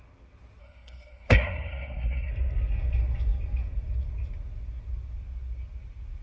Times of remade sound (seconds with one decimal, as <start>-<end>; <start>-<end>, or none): 0.6-2.3